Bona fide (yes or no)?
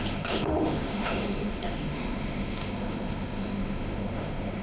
no